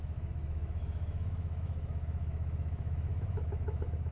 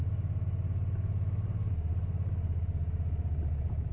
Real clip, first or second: second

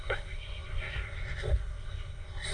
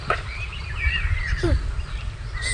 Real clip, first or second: second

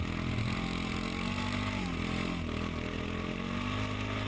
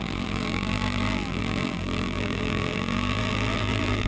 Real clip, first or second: first